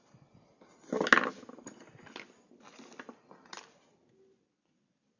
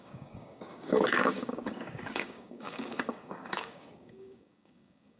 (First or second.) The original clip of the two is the first